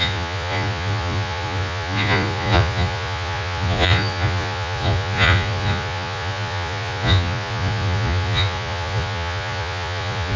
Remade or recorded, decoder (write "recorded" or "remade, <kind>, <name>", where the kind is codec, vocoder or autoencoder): remade, vocoder, Vocos